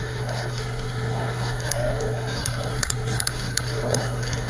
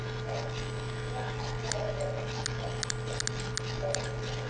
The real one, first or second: second